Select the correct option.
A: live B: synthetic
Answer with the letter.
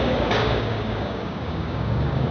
B